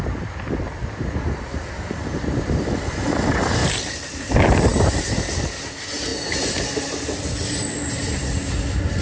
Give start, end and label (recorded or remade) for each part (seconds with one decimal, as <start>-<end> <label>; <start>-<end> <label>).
0.0-3.6 recorded; 3.6-5.0 remade; 5.0-9.0 recorded